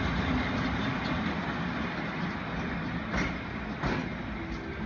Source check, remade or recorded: recorded